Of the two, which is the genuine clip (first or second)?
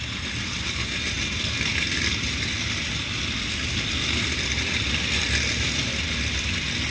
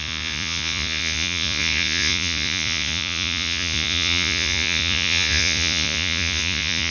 first